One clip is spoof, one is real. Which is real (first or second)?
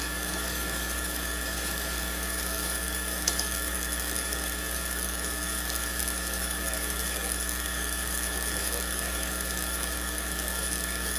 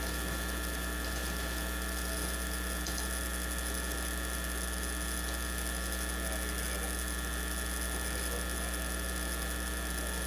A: second